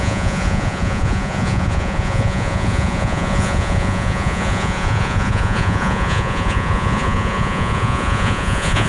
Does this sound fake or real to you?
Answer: fake